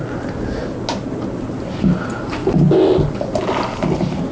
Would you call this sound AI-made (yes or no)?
no